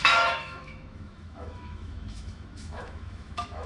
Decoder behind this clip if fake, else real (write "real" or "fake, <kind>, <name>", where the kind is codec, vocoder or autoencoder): fake, autoencoder, DAC-VAE